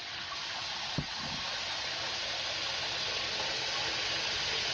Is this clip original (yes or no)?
yes